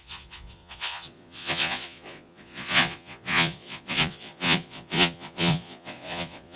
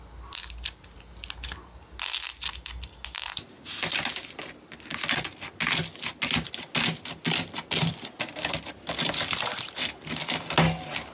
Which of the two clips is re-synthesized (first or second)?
first